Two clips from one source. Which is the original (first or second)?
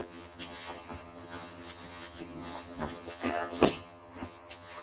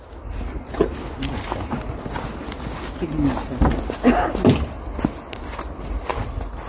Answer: second